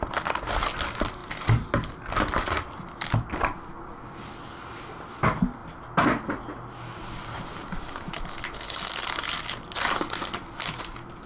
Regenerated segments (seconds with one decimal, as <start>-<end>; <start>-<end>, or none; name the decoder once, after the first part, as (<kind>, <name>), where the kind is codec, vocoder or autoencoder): none